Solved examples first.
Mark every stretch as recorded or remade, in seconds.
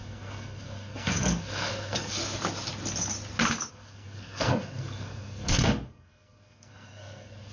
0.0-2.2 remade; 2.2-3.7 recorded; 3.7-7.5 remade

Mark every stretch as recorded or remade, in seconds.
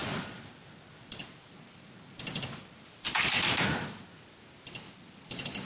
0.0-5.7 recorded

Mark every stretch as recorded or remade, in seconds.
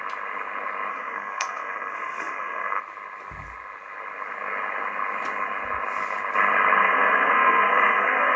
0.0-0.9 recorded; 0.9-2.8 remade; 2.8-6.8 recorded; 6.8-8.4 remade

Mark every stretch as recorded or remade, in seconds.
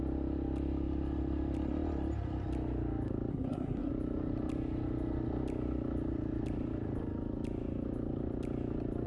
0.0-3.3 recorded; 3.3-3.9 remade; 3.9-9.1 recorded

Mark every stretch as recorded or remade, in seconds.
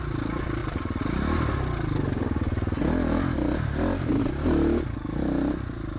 0.0-6.0 recorded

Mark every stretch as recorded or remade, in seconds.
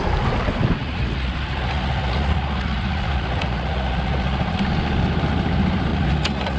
0.0-0.8 recorded; 0.8-4.6 remade; 4.6-5.9 recorded; 5.9-6.6 remade